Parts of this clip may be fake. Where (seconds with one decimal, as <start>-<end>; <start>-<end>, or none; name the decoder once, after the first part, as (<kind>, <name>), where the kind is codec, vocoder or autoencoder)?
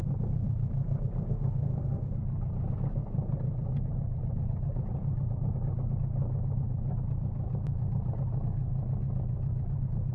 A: 1.2-2.1 (autoencoder, DAC-VAE)